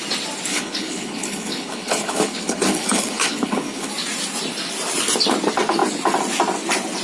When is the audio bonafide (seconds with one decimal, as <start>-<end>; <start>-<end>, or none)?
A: 0.0-0.5; 3.9-7.0